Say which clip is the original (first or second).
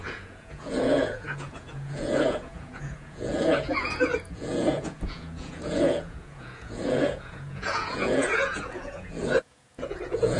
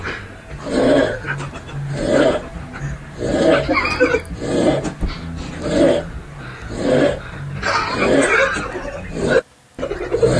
second